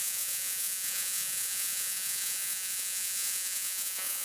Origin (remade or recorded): remade